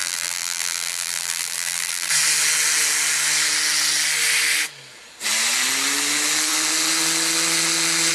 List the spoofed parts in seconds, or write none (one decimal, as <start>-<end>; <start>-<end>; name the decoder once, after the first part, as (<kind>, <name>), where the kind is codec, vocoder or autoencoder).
0.0-2.1 (vocoder, BigVGAN v2)